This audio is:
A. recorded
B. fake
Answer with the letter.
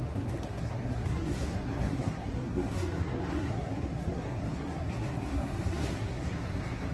B